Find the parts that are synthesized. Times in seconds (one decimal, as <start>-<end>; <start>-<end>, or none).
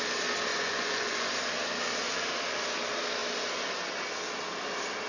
0.5-1.3